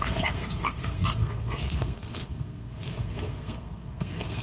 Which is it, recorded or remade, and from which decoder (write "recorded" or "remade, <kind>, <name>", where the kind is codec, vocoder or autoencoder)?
remade, codec, SNAC